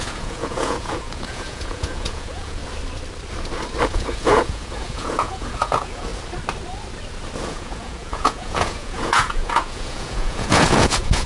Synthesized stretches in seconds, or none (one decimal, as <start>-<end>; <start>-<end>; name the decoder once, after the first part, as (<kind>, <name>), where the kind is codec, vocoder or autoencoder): 0.0-2.6 (vocoder, Vocos); 3.9-6.1; 7.4-11.3